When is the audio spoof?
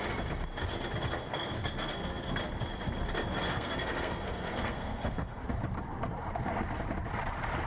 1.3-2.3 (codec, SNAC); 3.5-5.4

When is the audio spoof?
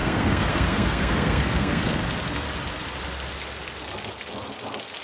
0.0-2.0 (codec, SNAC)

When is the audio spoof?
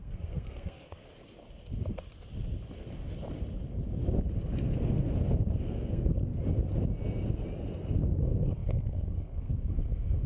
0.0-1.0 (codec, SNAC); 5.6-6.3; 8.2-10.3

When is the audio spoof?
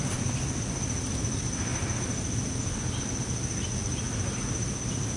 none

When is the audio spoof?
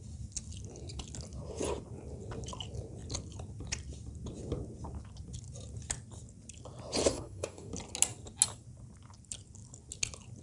7.1-7.7 (codec, SNAC)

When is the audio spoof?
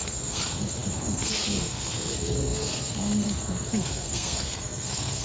0.0-5.2 (codec, SNAC)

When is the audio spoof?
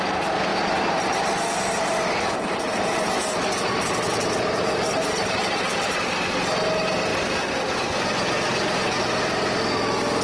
none